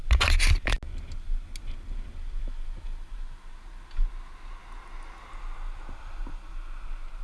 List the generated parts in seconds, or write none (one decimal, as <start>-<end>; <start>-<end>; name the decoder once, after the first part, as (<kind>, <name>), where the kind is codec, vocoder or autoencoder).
none